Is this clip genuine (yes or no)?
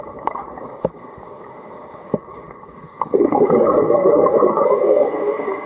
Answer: no